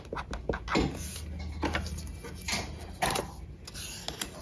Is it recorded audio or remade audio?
recorded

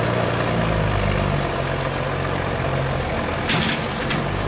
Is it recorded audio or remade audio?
recorded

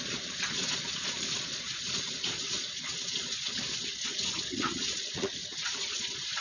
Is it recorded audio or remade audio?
remade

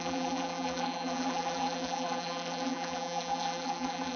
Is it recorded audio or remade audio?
remade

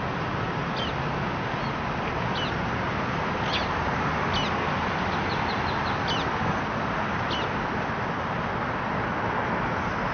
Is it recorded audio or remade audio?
recorded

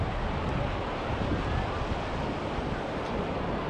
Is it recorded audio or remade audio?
recorded